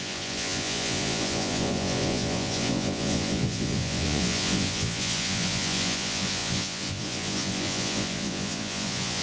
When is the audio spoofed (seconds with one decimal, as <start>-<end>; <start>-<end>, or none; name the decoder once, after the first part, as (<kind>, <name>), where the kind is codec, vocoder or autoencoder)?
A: 0.0-9.2 (vocoder, Vocos)